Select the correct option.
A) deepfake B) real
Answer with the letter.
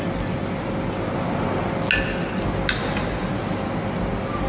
B